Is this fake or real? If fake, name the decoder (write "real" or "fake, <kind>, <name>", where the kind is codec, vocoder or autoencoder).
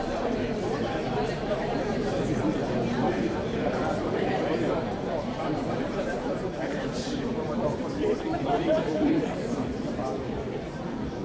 fake, vocoder, BigVGAN v2